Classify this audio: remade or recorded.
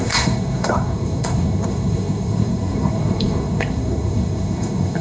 remade